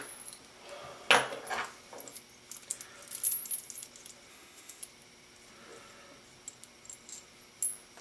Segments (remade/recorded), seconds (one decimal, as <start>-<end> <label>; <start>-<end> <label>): 0.0-4.3 recorded; 4.3-4.8 remade; 4.8-8.0 recorded